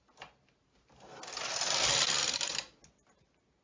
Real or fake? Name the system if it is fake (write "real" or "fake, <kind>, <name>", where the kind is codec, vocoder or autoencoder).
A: real